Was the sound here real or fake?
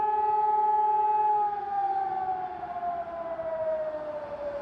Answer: real